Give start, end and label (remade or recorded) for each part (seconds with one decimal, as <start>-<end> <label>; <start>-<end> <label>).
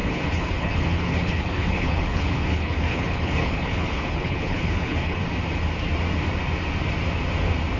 0.0-5.2 remade; 5.2-7.8 recorded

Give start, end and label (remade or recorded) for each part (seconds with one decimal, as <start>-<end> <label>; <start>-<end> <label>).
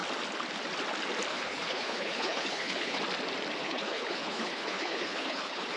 0.0-1.3 recorded; 1.3-3.0 remade; 3.0-3.6 recorded; 3.6-5.8 remade